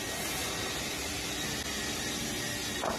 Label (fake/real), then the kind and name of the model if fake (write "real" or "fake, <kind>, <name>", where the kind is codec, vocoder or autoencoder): real